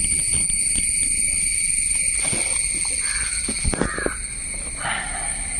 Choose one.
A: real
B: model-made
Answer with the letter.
A